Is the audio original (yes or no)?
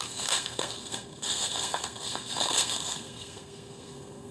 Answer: no